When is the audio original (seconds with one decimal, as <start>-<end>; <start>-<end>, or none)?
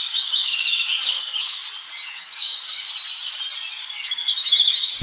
1.6-2.1; 2.9-3.8